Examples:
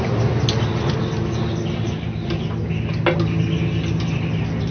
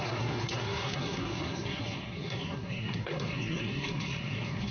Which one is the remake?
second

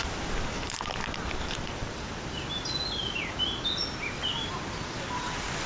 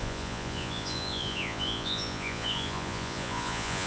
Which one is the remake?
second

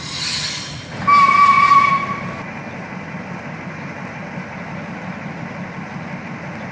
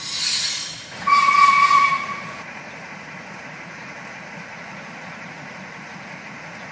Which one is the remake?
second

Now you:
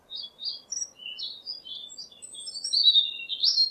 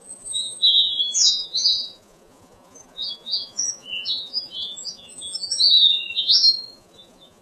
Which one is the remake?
second